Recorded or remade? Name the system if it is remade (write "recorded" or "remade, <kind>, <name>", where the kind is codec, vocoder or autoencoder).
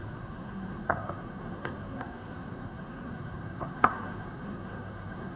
remade, codec, SNAC